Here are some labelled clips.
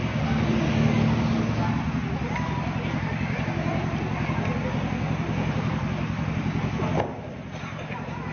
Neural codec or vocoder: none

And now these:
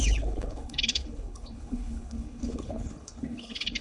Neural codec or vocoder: codec, HILCodec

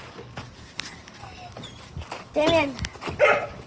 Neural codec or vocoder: none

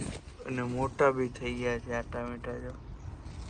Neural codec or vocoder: none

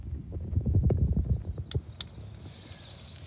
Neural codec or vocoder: none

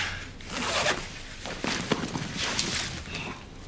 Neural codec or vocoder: none